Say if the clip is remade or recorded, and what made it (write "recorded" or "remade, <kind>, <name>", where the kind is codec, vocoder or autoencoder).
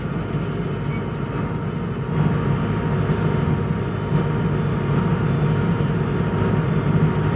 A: recorded